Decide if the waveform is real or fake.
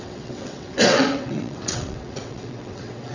fake